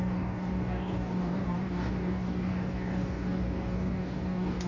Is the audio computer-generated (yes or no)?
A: yes